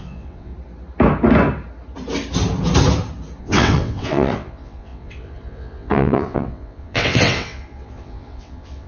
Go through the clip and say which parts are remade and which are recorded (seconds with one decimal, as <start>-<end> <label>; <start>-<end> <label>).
0.0-0.5 remade; 0.5-3.4 recorded; 3.4-8.9 remade